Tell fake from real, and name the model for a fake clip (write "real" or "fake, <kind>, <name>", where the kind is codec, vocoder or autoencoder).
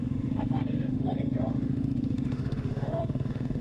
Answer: fake, autoencoder, DAC-VAE